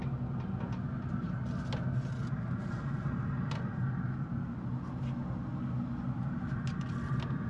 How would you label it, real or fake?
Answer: real